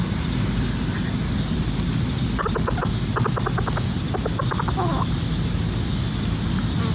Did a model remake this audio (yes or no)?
no